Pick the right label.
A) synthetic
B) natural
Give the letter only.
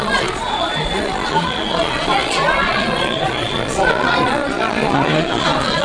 A